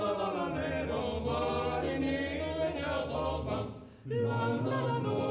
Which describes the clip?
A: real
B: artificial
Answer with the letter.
A